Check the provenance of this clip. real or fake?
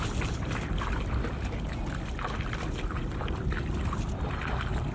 real